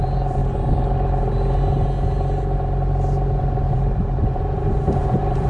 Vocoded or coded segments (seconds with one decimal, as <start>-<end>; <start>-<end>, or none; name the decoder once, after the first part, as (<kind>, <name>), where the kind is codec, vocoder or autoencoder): 0.0-0.4 (vocoder, BigVGAN v2); 3.7-5.5